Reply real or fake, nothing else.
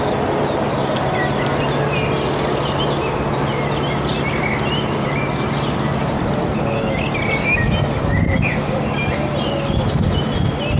real